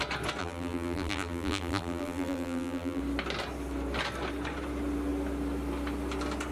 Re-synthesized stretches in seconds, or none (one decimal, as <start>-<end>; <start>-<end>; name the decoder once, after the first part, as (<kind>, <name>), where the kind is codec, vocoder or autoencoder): 0.4-3.0 (vocoder, BigVGAN v2)